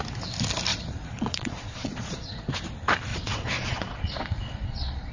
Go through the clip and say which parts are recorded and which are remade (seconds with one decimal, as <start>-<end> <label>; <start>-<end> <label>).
0.0-0.7 recorded; 0.7-2.5 remade; 2.5-3.1 recorded; 3.1-5.1 remade